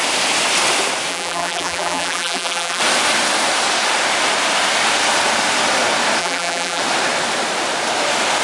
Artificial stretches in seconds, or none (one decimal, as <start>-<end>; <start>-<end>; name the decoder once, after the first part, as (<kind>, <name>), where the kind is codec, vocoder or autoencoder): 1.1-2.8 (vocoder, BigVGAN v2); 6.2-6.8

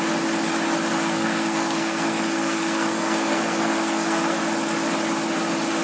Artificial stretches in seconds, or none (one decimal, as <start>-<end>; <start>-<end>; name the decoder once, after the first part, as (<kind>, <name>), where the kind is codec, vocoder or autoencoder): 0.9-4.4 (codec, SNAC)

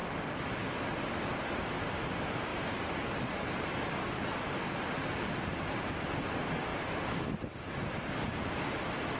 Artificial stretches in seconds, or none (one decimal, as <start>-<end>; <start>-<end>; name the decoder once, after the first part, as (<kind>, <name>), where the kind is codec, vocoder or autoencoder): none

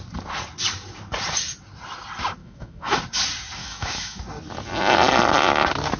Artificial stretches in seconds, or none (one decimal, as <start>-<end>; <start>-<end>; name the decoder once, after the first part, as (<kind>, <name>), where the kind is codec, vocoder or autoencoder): 2.4-3.0 (autoencoder, DAC-VAE); 3.6-4.2

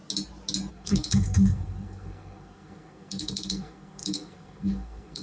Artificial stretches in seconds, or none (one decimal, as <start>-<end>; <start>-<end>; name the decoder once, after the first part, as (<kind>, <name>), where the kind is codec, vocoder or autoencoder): 0.7-5.2 (codec, SNAC)

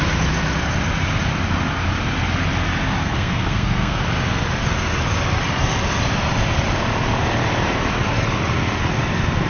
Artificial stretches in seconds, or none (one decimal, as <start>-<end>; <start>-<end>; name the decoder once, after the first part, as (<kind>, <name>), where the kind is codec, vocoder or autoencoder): 3.0-4.0 (codec, SNAC)

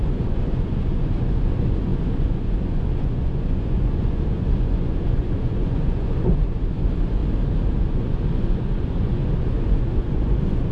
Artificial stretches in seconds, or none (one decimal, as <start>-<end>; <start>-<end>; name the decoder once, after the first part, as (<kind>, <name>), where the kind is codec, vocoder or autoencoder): 0.0-7.2 (vocoder, Vocos); 7.7-10.7

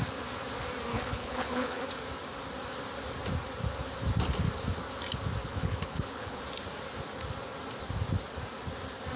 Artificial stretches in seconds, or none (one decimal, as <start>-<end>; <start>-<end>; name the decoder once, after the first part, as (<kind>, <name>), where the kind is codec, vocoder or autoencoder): 0.9-1.8 (codec, HILCodec); 5.4-6.4